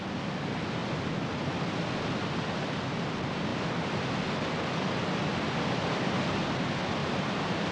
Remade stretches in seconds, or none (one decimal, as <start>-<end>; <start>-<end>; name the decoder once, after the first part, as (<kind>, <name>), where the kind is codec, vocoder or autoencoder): 7.0-7.7 (vocoder, BigVGAN v2)